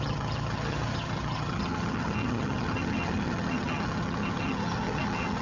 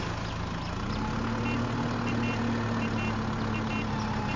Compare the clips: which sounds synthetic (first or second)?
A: first